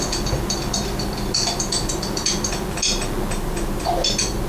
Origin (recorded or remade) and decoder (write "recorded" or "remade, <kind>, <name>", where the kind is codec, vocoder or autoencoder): recorded